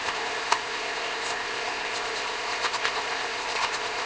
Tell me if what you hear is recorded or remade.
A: remade